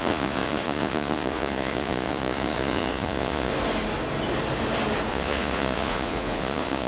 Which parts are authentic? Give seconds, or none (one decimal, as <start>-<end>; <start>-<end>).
3.5-5.1

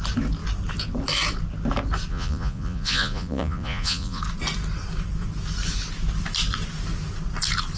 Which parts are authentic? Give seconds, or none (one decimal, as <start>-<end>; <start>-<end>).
0.0-2.1; 4.2-7.8

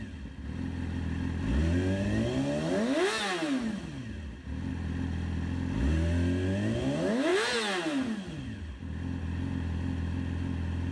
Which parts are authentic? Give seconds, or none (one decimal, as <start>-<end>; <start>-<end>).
0.0-10.9